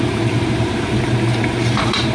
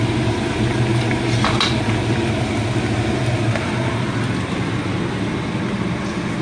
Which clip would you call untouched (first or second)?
second